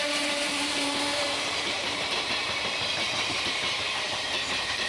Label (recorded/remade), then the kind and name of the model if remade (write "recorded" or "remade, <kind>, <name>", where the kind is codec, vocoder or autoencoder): remade, vocoder, BigVGAN v2